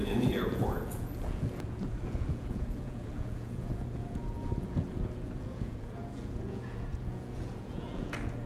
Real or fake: fake